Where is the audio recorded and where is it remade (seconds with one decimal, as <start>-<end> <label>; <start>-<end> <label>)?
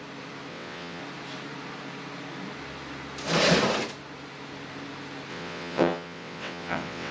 0.0-0.5 recorded; 0.5-1.0 remade; 1.0-5.3 recorded; 5.3-7.1 remade